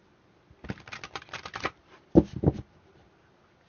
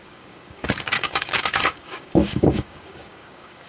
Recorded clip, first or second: first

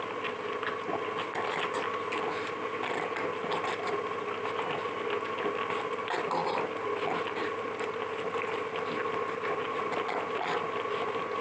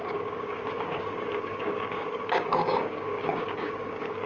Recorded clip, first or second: first